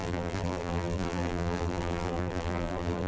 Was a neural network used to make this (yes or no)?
yes